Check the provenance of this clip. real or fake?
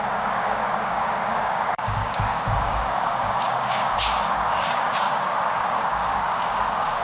fake